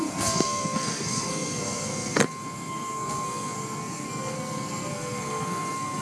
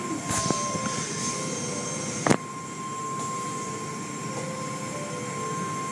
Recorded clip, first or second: second